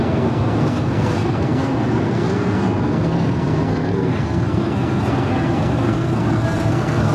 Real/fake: fake